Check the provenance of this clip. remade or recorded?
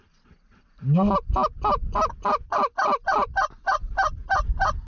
recorded